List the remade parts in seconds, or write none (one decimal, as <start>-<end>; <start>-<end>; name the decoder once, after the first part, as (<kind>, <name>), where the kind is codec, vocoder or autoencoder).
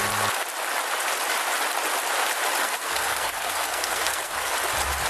2.6-4.5 (codec, SNAC)